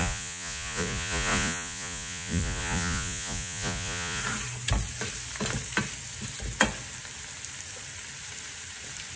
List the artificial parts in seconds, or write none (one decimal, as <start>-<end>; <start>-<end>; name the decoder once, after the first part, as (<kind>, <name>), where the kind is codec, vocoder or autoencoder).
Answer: 0.0-4.2 (vocoder, Vocos)